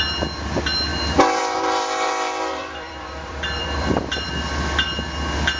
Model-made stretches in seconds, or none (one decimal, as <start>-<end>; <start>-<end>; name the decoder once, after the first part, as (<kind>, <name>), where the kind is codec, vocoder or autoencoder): 0.9-4.3 (vocoder, BigVGAN v2)